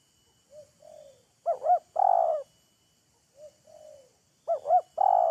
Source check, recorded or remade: recorded